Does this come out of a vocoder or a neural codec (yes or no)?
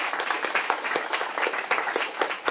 yes